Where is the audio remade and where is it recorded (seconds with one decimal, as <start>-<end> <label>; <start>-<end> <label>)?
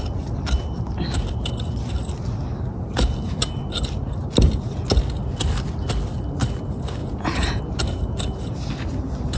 0.0-7.0 recorded; 7.0-7.6 remade; 7.6-9.4 recorded